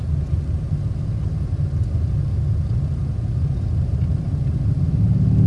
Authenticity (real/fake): real